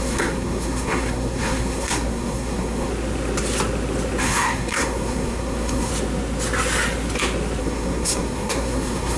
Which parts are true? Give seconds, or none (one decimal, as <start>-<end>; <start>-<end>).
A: 2.9-4.2; 5.9-7.6